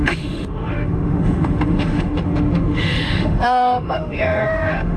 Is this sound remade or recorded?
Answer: remade